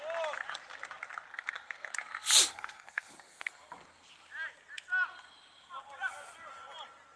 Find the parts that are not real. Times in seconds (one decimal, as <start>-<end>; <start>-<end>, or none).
1.3-1.9; 2.5-3.5